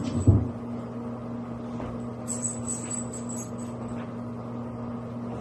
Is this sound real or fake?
real